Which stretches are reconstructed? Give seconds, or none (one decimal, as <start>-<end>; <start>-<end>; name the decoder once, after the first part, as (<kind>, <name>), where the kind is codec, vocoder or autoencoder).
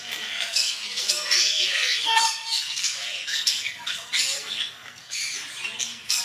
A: 0.0-5.2 (codec, SNAC); 5.8-6.2